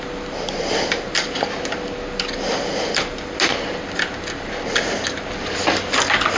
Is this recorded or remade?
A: recorded